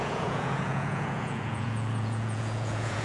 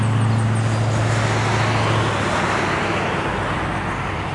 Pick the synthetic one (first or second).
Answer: first